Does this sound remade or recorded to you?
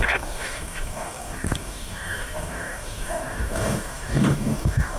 remade